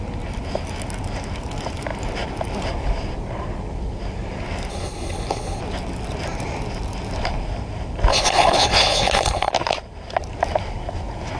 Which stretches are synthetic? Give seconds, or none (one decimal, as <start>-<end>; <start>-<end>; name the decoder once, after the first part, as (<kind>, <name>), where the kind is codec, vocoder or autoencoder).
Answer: 4.7-5.6 (codec, HILCodec); 8.1-9.5